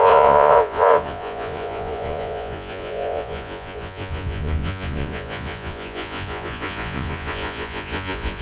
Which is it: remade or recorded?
remade